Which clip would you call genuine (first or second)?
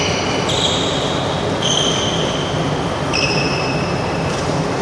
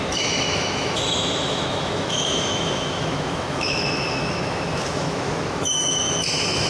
first